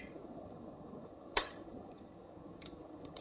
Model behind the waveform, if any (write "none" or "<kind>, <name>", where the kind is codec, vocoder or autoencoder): vocoder, HiFi-GAN